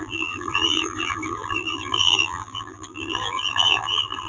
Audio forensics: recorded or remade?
remade